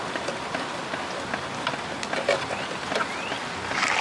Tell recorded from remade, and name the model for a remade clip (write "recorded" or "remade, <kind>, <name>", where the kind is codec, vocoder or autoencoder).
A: recorded